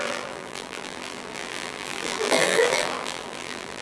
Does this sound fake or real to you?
fake